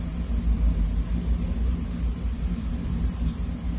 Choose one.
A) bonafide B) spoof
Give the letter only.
B